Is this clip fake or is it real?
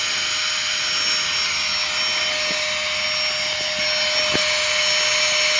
real